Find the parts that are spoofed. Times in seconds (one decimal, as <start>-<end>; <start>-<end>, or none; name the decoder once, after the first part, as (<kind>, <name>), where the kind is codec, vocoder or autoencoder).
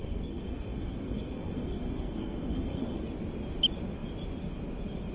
0.0-3.1 (codec, SNAC)